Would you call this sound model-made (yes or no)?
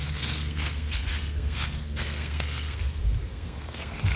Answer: yes